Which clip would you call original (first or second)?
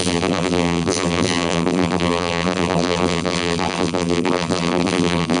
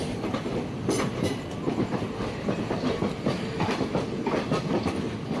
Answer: second